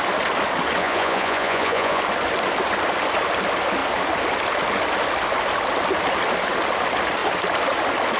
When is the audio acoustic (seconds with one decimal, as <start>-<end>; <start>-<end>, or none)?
0.0-0.8; 2.0-8.2